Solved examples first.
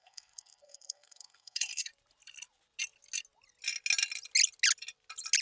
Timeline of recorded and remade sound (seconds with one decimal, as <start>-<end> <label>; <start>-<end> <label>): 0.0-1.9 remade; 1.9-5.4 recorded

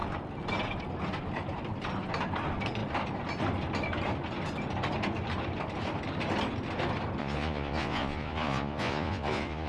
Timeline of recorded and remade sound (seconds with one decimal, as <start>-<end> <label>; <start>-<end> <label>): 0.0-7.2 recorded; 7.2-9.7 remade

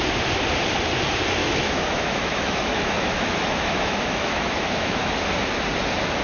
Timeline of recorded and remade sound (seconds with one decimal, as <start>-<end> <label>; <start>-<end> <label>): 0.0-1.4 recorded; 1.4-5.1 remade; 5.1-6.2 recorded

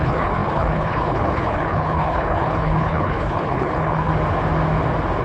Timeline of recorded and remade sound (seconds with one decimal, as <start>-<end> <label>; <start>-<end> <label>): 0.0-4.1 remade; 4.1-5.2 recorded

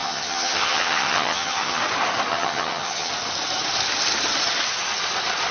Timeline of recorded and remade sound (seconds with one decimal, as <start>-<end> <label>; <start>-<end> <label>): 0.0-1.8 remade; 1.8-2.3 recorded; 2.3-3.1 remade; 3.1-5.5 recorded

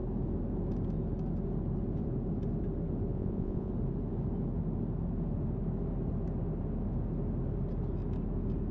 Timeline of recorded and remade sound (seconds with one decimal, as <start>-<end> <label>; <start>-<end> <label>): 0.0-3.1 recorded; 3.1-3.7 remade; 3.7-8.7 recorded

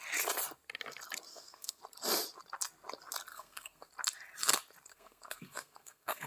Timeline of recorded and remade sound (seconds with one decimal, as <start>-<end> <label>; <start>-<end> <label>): 0.0-1.3 recorded; 1.3-1.8 remade; 1.8-3.3 recorded; 3.3-3.9 remade; 3.9-4.9 recorded; 4.9-6.3 remade